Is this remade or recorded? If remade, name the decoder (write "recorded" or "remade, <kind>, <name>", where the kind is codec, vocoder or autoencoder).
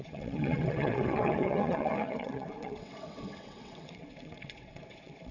remade, vocoder, WaveNeXt